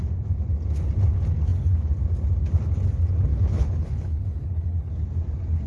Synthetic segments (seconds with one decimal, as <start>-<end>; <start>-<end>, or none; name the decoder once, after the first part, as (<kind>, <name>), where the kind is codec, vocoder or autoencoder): 3.3-4.9 (codec, HILCodec)